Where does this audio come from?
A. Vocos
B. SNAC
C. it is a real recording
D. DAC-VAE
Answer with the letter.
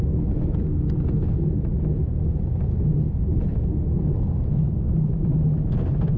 C